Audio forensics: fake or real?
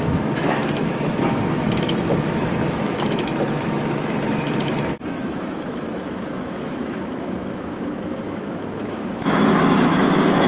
fake